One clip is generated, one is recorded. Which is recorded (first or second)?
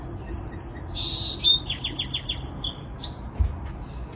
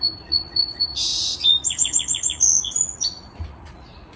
first